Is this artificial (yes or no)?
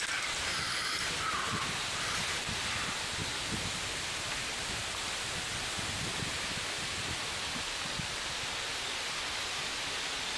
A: no